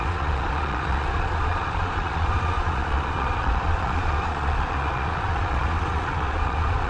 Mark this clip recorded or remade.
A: remade